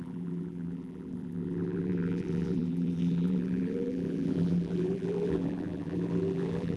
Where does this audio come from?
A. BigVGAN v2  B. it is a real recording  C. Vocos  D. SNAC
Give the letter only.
A